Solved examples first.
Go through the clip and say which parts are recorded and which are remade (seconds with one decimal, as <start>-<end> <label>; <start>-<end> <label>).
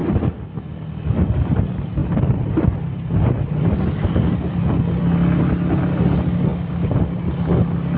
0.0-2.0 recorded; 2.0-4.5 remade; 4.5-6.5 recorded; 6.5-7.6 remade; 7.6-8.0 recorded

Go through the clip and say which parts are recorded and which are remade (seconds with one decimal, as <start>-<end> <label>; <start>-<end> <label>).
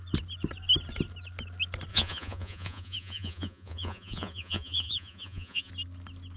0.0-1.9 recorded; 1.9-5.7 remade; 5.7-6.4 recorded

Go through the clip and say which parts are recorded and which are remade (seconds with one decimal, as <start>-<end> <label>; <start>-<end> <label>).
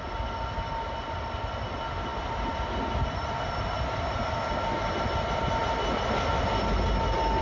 0.0-7.4 recorded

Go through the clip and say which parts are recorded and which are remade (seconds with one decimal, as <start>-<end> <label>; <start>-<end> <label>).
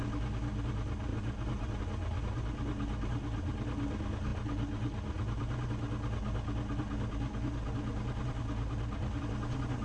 0.0-1.1 recorded; 1.1-1.8 remade; 1.8-9.8 recorded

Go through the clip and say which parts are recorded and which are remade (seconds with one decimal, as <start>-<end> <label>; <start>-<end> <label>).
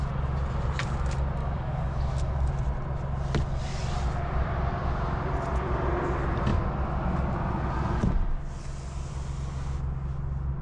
0.0-1.4 recorded; 1.4-2.5 remade; 2.5-10.6 recorded